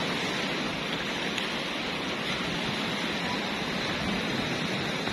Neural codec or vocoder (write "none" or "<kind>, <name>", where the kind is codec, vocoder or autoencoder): none